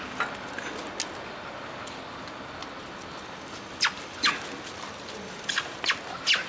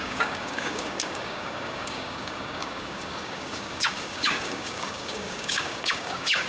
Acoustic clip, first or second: first